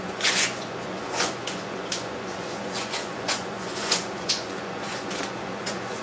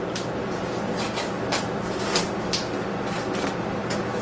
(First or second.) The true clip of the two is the second